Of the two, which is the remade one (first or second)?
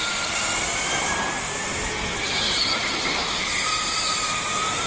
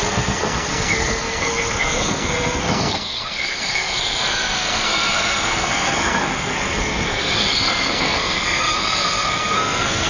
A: second